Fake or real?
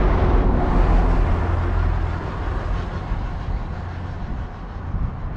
real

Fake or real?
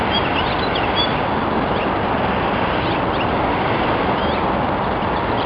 real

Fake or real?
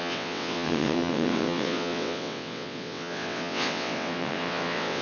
fake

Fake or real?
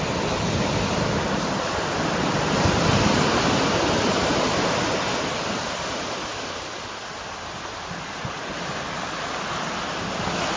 real